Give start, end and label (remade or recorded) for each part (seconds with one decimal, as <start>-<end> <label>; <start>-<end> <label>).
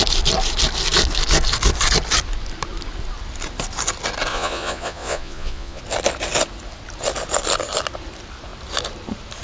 0.0-4.3 recorded; 4.3-5.8 remade; 5.8-9.4 recorded